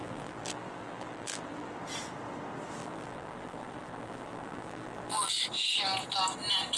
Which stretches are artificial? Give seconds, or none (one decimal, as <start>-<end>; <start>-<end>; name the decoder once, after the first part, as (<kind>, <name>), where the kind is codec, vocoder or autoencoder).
0.0-1.7 (vocoder, BigVGAN v2); 2.8-5.3